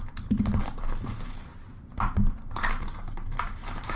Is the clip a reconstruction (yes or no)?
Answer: no